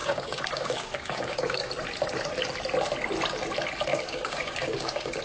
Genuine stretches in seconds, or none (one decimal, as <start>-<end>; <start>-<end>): 1.7-3.9